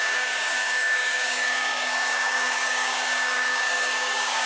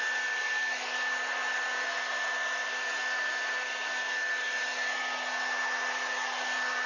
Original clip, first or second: second